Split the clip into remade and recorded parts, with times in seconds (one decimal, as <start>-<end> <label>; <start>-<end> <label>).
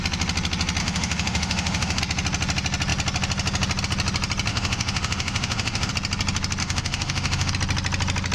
0.0-0.8 recorded; 0.8-2.0 remade; 2.0-4.5 recorded; 4.5-5.9 remade; 5.9-6.6 recorded; 6.6-7.5 remade; 7.5-8.3 recorded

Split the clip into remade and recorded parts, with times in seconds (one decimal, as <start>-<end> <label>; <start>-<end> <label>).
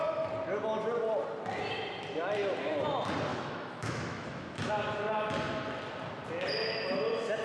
0.0-3.3 recorded; 3.3-4.7 remade; 4.7-7.4 recorded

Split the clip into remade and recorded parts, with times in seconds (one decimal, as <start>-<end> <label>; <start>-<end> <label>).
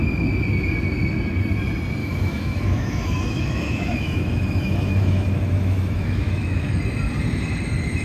0.0-2.0 recorded; 2.0-6.8 remade; 6.8-8.0 recorded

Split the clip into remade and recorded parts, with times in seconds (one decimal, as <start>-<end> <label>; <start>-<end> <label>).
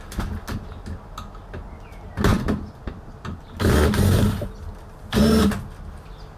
0.0-6.4 recorded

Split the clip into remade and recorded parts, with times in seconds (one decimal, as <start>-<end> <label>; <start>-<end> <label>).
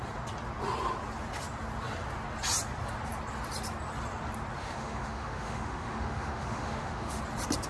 0.0-4.6 recorded; 4.6-7.2 remade; 7.2-7.7 recorded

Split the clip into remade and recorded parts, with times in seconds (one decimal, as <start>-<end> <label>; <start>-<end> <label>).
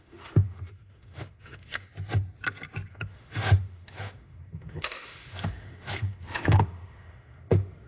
0.0-1.9 remade; 1.9-2.9 recorded; 2.9-7.9 remade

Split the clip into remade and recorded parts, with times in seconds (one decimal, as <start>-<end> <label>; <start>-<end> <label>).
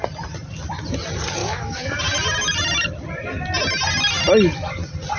0.0-1.4 recorded; 1.4-2.0 remade; 2.0-5.2 recorded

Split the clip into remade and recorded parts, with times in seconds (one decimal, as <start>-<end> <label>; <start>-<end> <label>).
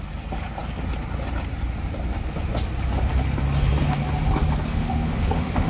0.0-4.7 recorded; 4.7-5.7 remade